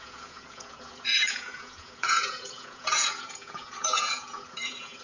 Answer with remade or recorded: remade